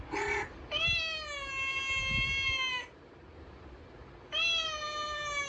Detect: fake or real real